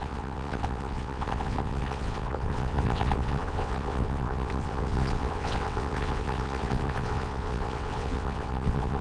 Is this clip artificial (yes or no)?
yes